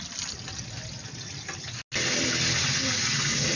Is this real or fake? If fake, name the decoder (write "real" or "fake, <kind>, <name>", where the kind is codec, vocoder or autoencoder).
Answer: real